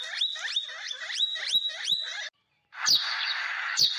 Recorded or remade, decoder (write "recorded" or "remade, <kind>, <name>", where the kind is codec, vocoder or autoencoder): recorded